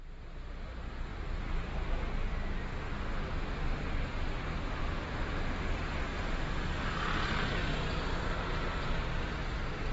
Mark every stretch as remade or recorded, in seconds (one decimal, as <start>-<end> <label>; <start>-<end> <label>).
0.0-1.1 recorded; 1.1-2.3 remade; 2.3-9.9 recorded